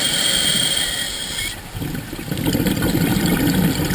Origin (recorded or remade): recorded